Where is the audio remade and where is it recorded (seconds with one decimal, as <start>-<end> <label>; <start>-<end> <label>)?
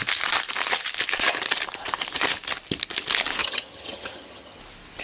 0.0-3.4 recorded; 3.4-4.6 remade; 4.6-5.0 recorded